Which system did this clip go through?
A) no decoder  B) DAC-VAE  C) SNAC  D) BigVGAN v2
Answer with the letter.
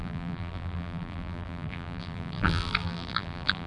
D